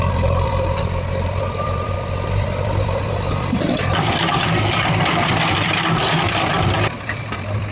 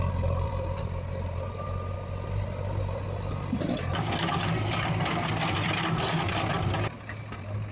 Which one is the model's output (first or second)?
first